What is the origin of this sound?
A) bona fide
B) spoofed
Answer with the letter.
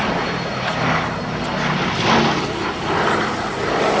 A